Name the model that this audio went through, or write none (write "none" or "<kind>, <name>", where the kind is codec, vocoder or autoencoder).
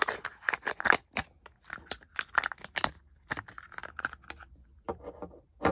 none